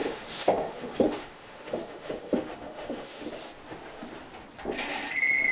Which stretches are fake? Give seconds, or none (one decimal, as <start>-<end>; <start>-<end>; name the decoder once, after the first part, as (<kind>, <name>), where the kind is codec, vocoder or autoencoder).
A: 0.0-3.3 (autoencoder, DAC-VAE)